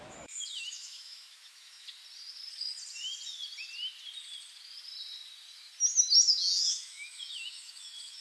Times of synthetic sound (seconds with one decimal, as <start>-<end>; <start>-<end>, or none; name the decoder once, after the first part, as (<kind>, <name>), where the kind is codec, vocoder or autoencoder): 0.0-2.0 (autoencoder, DAC-VAE); 6.6-8.2